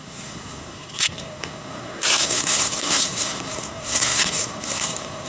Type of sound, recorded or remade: remade